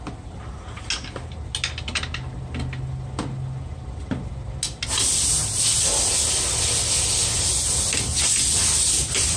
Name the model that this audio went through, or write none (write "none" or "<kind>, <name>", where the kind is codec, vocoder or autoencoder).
none